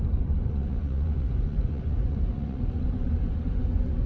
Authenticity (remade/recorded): remade